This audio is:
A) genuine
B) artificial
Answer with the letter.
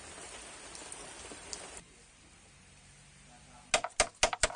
A